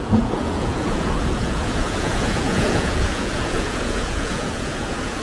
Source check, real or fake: fake